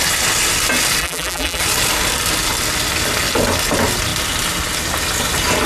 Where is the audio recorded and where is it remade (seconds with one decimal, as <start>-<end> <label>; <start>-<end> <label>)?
0.0-1.0 recorded; 1.0-1.6 remade; 1.6-5.7 recorded